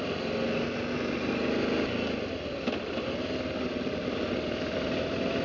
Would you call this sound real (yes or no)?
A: yes